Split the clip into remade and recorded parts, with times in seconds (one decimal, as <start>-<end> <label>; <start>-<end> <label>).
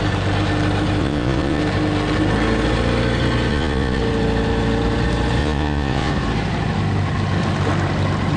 0.0-1.0 recorded; 1.0-1.6 remade; 1.6-3.5 recorded; 3.5-4.0 remade; 4.0-5.4 recorded; 5.4-6.1 remade; 6.1-8.4 recorded